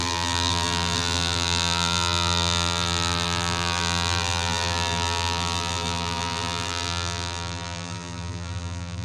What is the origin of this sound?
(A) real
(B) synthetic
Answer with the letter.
B